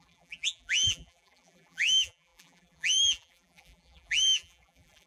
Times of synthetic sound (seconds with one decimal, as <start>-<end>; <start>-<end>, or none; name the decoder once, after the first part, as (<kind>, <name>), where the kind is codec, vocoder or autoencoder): 0.0-5.1 (vocoder, BigVGAN v2)